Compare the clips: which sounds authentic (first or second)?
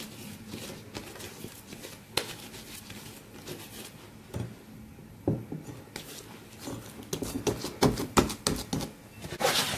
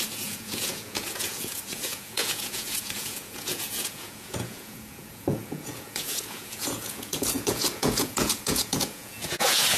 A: first